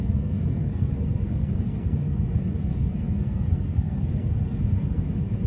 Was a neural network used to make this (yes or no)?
yes